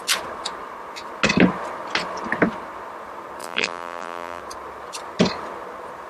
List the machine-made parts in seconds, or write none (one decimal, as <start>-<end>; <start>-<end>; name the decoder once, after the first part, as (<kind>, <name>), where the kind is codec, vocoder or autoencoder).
3.4-4.4 (vocoder, BigVGAN v2)